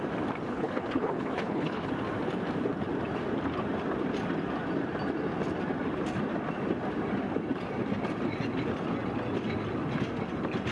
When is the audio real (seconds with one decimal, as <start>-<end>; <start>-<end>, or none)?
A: 0.0-0.5; 1.9-10.7